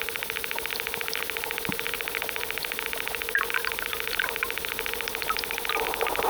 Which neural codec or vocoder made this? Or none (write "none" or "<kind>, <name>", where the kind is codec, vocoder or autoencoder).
none